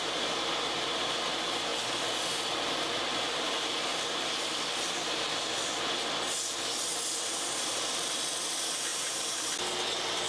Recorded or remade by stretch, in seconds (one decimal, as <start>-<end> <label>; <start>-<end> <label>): 0.0-10.3 recorded